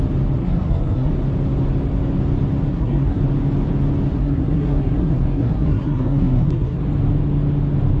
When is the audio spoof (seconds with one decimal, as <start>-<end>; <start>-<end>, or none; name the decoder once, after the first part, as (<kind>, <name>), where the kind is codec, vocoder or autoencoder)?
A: 0.4-1.1 (codec, SNAC); 2.7-3.2; 4.1-6.8